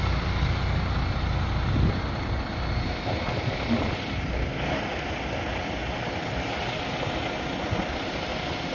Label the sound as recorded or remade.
recorded